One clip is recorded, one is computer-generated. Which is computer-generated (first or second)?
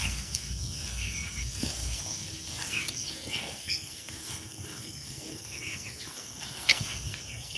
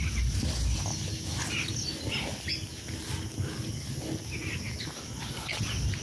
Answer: first